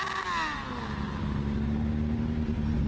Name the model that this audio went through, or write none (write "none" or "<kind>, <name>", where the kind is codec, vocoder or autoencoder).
none